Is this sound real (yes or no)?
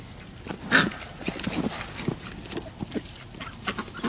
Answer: yes